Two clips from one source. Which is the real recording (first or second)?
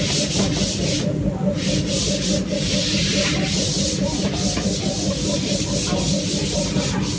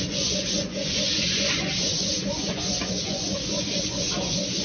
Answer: first